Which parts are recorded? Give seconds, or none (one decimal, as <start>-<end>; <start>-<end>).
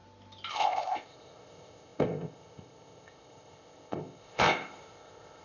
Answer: 0.0-0.5